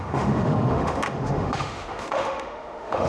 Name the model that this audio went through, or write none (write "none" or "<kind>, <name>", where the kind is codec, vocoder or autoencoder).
autoencoder, DAC-VAE